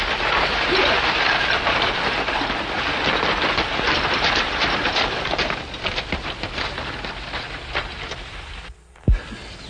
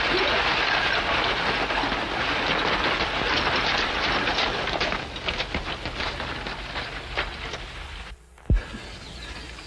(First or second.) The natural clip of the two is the second